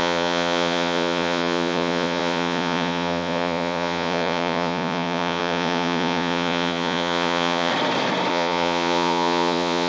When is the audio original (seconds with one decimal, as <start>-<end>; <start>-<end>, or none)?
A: 7.7-8.3